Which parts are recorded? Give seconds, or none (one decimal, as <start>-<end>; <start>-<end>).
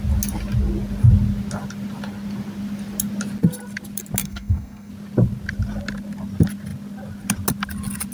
0.0-4.2; 4.9-8.1